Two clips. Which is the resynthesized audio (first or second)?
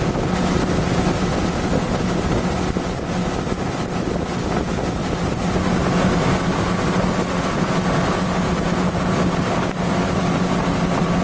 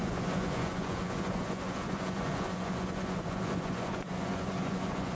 second